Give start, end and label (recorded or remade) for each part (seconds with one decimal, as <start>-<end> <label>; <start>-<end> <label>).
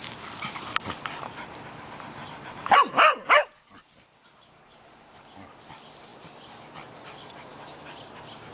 0.0-2.2 recorded; 2.2-5.2 remade; 5.2-8.5 recorded